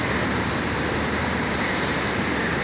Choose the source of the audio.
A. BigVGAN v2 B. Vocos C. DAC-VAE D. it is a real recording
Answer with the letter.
A